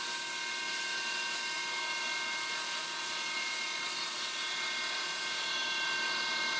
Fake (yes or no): no